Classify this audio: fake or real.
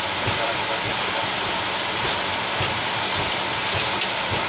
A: real